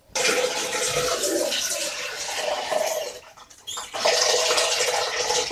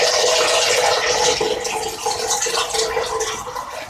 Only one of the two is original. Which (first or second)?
second